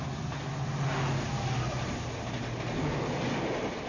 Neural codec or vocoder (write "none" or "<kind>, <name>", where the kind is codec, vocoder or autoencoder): none